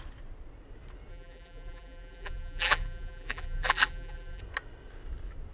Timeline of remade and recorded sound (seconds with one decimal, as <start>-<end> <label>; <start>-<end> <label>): 0.0-1.1 recorded; 1.1-4.4 remade; 4.4-5.5 recorded